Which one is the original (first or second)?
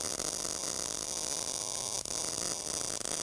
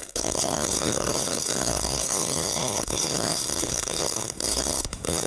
first